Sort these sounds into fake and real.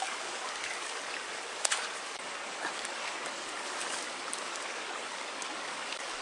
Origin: fake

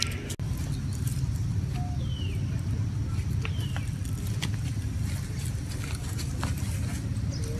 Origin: real